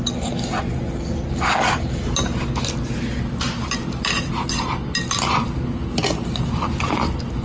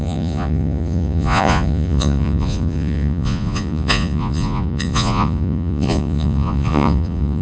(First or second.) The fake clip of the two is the second